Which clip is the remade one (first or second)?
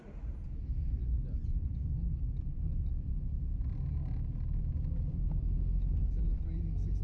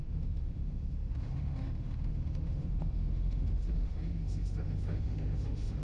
second